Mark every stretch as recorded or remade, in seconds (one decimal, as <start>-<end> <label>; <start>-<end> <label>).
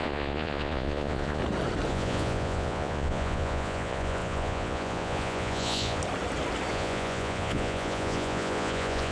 0.0-1.4 remade; 1.4-1.9 recorded; 1.9-6.0 remade; 6.0-6.7 recorded; 6.7-9.1 remade